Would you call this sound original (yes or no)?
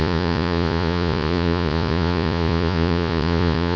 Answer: no